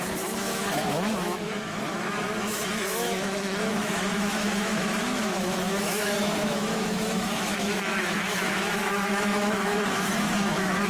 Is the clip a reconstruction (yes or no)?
yes